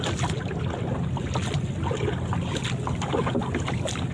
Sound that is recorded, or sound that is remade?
recorded